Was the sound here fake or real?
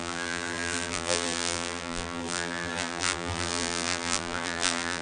fake